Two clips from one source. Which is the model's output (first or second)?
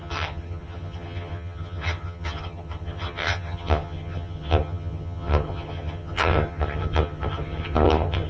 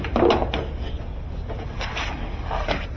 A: first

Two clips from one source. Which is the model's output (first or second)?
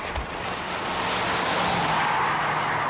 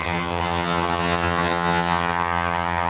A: second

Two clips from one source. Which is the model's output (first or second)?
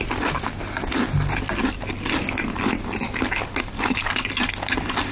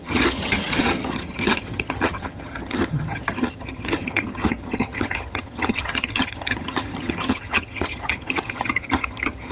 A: second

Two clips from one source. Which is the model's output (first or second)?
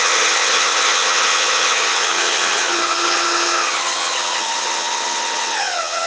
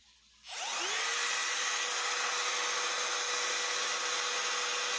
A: first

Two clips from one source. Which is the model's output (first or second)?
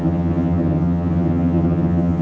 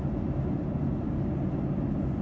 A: first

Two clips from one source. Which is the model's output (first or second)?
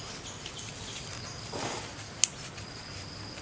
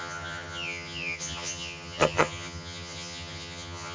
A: second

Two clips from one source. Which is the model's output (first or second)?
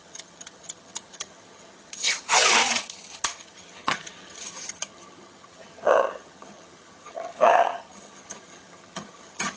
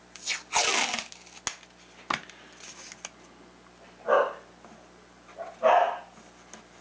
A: first